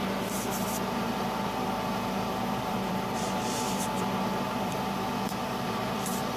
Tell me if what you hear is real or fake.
fake